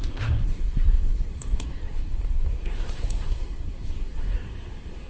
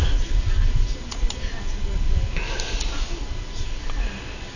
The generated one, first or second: first